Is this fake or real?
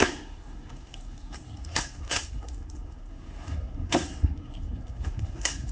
fake